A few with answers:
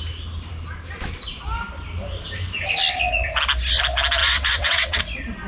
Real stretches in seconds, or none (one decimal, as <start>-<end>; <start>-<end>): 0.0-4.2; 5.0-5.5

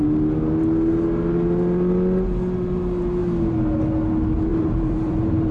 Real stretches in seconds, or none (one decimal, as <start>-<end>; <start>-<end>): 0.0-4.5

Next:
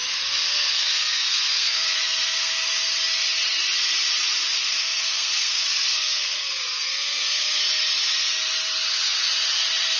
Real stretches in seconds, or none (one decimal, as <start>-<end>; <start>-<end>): 0.0-0.5; 2.5-4.6; 7.6-10.0